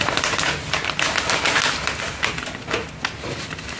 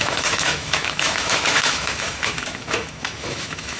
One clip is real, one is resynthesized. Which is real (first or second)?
first